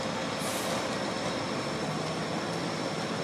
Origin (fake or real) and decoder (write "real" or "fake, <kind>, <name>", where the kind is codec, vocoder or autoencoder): real